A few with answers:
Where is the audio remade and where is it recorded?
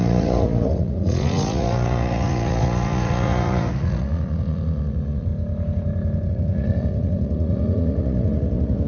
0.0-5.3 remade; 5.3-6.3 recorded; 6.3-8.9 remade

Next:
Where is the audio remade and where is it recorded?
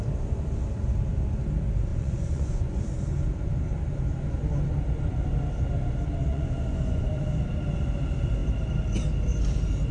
0.0-1.9 recorded; 1.9-2.8 remade; 2.8-6.3 recorded; 6.3-7.1 remade; 7.1-9.9 recorded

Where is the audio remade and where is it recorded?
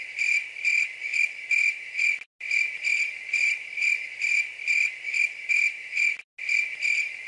0.0-7.3 recorded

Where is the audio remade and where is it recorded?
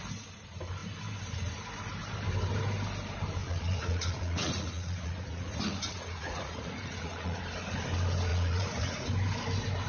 0.0-3.4 recorded; 3.4-7.4 remade; 7.4-8.3 recorded; 8.3-9.1 remade; 9.1-9.9 recorded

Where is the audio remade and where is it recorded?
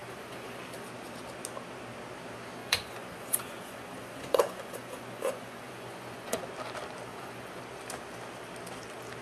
0.0-0.6 remade; 0.6-2.6 recorded; 2.6-6.4 remade; 6.4-7.1 recorded; 7.1-7.6 remade; 7.6-9.2 recorded